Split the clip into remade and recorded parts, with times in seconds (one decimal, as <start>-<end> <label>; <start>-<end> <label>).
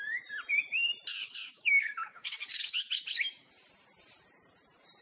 0.0-1.1 recorded; 1.1-3.5 remade; 3.5-5.0 recorded